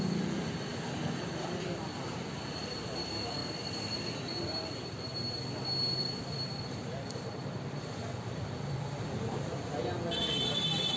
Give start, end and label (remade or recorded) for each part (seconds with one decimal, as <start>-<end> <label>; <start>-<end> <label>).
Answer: 0.0-0.7 remade; 0.7-1.2 recorded; 1.2-3.4 remade; 3.4-5.9 recorded; 5.9-11.0 remade